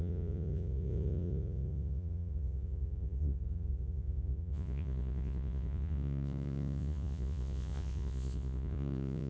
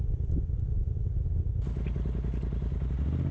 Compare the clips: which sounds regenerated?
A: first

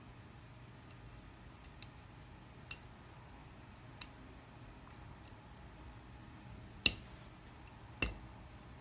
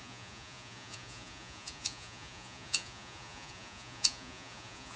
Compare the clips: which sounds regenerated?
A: second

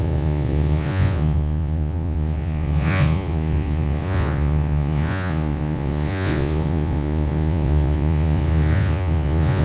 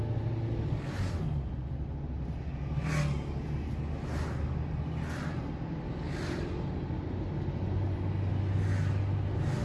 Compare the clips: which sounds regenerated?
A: first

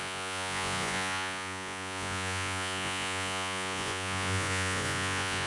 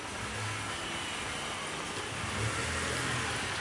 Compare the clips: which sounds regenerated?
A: first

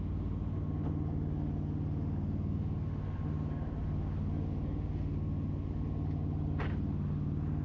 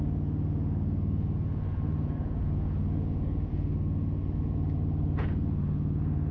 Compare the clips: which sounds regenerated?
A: second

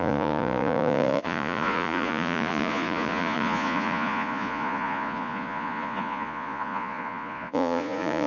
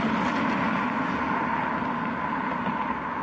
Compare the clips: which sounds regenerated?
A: first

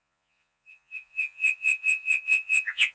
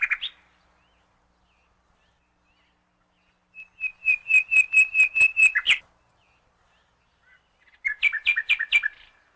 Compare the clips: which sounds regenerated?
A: first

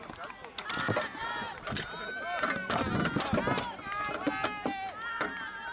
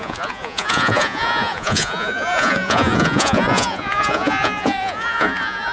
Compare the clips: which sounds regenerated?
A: second